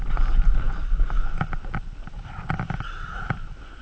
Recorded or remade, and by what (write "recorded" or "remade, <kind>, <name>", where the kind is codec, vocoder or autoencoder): recorded